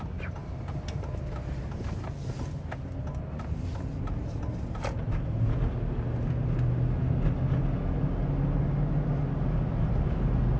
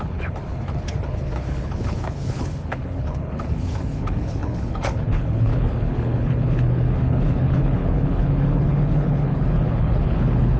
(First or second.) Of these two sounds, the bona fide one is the first